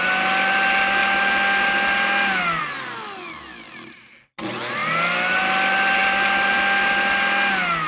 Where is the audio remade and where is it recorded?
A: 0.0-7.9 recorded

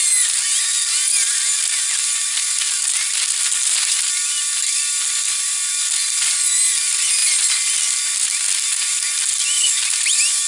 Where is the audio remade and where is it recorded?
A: 0.0-10.5 recorded

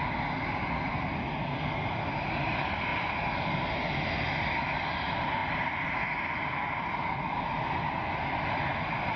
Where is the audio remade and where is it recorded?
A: 0.0-9.2 recorded

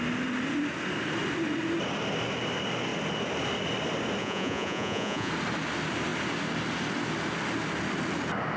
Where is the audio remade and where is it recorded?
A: 0.0-4.2 recorded; 4.2-5.3 remade; 5.3-8.6 recorded

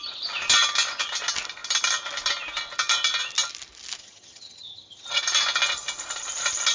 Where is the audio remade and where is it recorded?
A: 0.0-4.0 recorded; 4.0-5.2 remade; 5.2-6.7 recorded

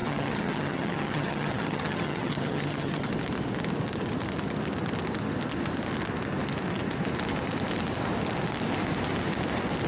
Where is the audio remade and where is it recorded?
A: 0.0-3.1 remade; 3.1-9.9 recorded

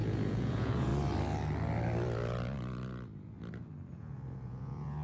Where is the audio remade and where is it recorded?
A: 0.0-0.9 remade; 0.9-3.9 recorded; 3.9-5.0 remade

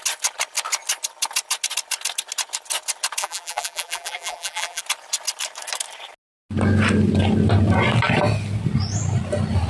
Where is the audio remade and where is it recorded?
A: 0.0-3.2 recorded; 3.2-4.8 remade; 4.8-9.7 recorded